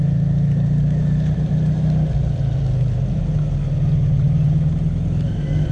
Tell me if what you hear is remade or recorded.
recorded